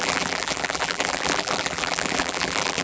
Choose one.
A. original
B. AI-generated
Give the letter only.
B